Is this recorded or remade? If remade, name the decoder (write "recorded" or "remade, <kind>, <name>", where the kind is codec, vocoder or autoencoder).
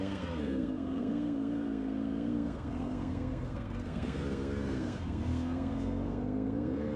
remade, codec, SNAC